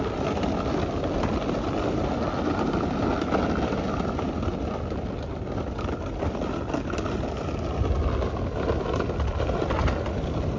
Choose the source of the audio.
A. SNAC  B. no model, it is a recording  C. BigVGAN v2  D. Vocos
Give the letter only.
B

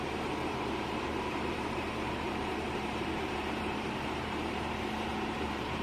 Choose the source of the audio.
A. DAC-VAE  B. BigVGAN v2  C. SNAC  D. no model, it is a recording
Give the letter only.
B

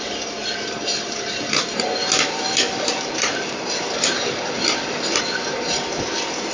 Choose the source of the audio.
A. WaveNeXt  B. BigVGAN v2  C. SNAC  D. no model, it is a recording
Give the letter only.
B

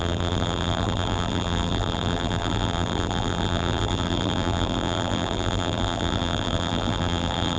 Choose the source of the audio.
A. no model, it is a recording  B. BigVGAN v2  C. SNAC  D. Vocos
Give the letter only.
B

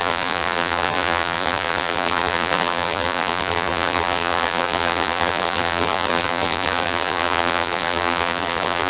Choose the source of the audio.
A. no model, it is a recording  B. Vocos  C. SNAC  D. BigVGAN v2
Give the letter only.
D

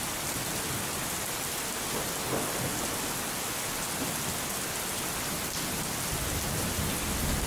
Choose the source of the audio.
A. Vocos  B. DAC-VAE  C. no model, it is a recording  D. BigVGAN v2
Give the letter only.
C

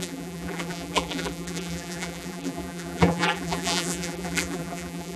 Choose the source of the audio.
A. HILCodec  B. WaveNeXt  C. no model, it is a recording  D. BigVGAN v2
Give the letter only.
D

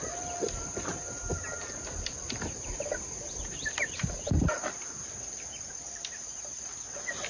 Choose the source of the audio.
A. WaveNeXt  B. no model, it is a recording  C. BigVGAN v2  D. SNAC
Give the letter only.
C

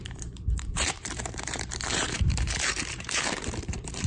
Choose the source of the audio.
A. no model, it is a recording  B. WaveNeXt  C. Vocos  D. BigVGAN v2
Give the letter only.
D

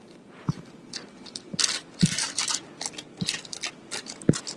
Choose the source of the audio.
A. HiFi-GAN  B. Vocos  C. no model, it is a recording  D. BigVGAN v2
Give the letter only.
C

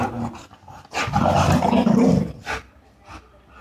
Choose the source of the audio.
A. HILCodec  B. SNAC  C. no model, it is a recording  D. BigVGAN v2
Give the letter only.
C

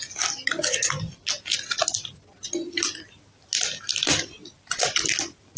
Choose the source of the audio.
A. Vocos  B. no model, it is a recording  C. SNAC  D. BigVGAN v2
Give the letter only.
B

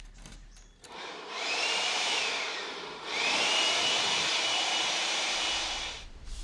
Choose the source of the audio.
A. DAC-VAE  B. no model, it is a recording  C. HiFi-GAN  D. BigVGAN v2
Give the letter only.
D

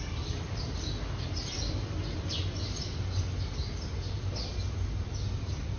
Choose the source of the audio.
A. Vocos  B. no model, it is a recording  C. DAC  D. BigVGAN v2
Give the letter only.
B